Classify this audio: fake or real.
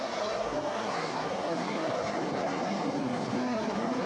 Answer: fake